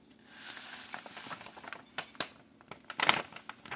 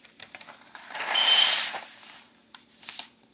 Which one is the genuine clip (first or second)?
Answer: first